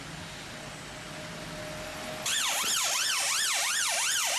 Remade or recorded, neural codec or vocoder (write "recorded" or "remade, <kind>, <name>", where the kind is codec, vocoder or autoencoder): recorded